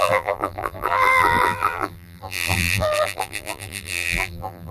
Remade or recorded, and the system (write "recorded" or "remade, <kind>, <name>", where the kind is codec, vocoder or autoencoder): remade, vocoder, BigVGAN v2